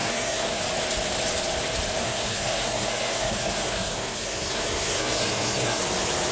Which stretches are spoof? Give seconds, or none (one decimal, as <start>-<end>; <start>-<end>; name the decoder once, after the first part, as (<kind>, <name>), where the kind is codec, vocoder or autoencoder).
0.0-0.6 (codec, SNAC); 2.0-5.8